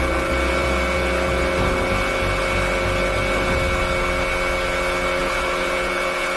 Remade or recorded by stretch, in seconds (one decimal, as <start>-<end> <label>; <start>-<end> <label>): 0.0-5.2 recorded; 5.2-6.4 remade